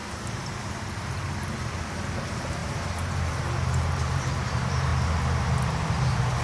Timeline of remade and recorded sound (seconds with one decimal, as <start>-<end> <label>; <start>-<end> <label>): 0.0-4.9 remade; 4.9-6.4 recorded